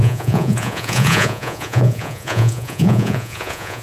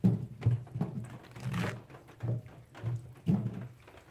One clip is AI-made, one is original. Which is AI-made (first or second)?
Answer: first